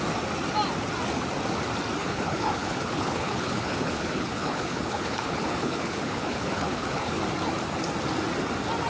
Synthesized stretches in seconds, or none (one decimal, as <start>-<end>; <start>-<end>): 2.0-7.2

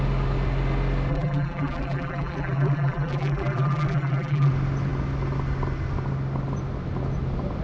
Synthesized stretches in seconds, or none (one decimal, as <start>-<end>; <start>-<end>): 1.1-4.5